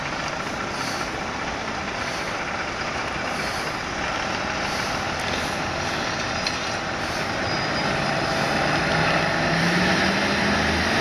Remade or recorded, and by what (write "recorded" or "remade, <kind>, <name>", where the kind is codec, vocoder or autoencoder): recorded